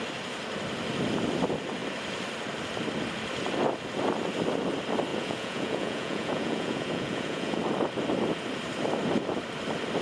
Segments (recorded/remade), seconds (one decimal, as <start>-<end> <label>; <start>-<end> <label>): 0.0-5.1 recorded; 5.1-7.6 remade; 7.6-10.0 recorded